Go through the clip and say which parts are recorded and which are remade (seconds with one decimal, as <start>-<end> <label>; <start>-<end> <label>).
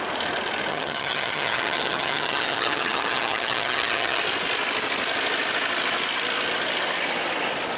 0.0-0.7 recorded; 0.7-4.2 remade; 4.2-7.8 recorded